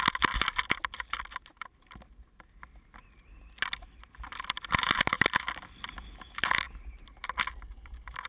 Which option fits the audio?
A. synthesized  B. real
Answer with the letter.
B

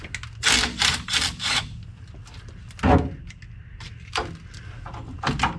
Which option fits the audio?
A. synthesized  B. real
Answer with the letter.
B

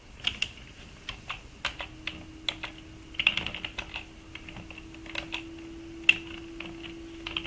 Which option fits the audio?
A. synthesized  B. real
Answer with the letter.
B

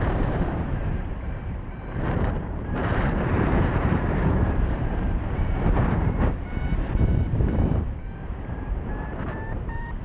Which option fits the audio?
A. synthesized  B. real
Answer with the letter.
A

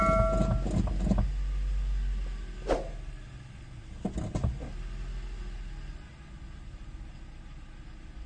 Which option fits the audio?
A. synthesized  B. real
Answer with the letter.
B